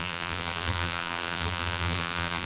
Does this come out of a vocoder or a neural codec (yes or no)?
yes